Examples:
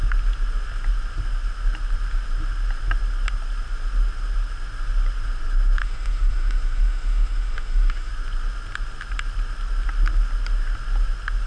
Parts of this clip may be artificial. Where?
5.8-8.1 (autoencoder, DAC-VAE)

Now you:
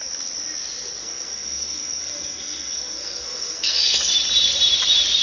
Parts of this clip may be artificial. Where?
1.0-4.1 (codec, SNAC)

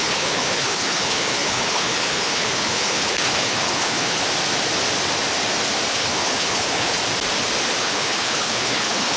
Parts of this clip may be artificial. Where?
0.0-4.2 (codec, HILCodec); 5.9-7.0; 7.8-9.2

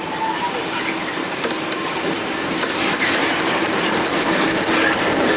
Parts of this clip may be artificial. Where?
1.0-4.2 (vocoder, BigVGAN v2)